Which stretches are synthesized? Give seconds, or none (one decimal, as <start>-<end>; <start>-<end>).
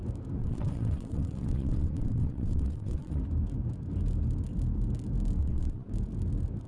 0.4-3.2; 5.4-5.9